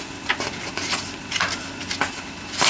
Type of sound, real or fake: real